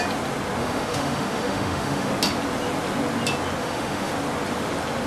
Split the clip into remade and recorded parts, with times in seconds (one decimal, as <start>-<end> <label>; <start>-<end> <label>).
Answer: 0.0-0.6 recorded; 0.6-2.1 remade; 2.1-3.6 recorded; 3.6-4.1 remade; 4.1-5.1 recorded